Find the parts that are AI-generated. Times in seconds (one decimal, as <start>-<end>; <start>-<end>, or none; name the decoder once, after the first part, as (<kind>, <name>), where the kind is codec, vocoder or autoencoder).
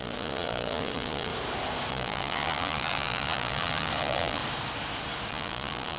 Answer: 0.0-1.3 (vocoder, Vocos); 1.9-4.4; 5.3-6.0